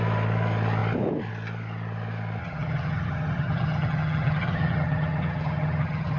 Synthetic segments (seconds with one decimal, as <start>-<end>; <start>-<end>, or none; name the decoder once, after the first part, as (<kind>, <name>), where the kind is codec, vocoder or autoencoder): 2.4-6.2 (vocoder, HiFi-GAN)